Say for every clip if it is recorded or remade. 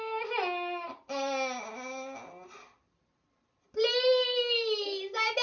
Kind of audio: recorded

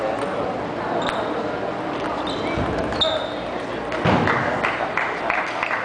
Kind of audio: recorded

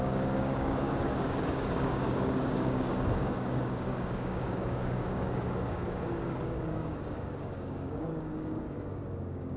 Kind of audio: remade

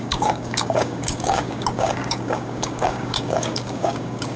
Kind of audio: remade